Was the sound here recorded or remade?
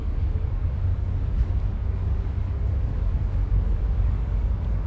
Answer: remade